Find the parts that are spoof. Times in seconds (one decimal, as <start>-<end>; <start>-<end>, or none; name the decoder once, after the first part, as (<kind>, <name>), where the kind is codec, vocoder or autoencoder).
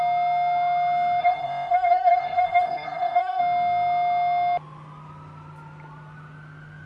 1.2-3.4 (codec, SNAC)